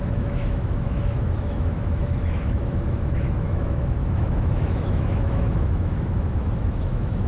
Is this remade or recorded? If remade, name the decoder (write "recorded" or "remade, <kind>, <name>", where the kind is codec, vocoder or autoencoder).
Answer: remade, autoencoder, DAC-VAE